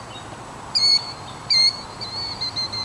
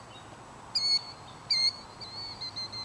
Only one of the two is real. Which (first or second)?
second